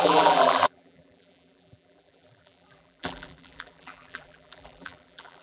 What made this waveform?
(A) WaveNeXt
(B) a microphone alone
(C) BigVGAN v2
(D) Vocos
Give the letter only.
C